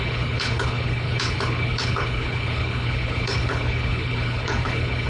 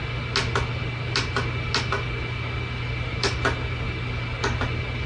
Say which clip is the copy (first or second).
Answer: first